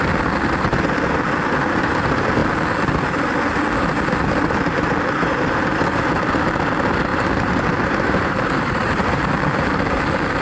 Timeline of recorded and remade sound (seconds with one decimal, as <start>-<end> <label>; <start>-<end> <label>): 0.0-7.1 recorded; 7.1-9.3 remade; 9.3-10.4 recorded